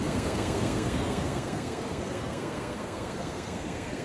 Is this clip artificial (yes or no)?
yes